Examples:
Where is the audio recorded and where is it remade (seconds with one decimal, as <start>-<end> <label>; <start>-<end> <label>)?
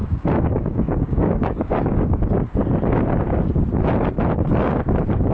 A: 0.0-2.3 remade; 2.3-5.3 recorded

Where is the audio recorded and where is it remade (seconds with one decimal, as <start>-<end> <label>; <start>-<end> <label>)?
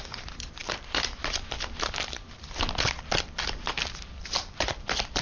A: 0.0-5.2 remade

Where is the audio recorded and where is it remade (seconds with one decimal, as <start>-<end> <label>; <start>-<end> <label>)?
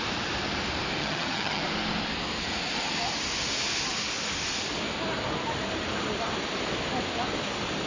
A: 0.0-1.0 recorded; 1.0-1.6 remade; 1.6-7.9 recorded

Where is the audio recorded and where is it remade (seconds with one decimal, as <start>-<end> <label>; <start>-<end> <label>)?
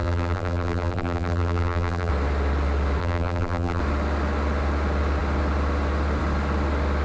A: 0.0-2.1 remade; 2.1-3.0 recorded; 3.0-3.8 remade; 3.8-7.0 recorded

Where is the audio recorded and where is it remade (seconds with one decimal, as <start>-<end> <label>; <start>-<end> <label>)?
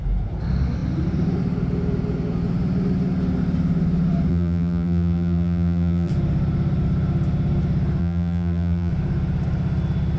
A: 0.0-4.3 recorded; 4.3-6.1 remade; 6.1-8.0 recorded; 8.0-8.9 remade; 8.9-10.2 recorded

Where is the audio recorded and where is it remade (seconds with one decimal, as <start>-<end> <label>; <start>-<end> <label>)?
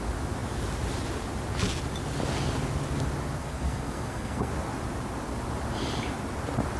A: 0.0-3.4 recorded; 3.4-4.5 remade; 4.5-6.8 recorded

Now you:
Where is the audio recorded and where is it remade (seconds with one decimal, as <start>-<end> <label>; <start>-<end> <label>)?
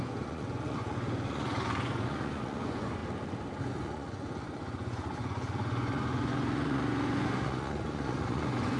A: 0.0-3.0 remade; 3.0-3.6 recorded; 3.6-8.8 remade